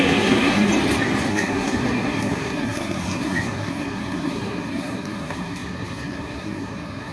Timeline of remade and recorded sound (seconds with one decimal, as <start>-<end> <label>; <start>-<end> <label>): 0.0-0.7 remade; 0.7-1.3 recorded; 1.3-7.1 remade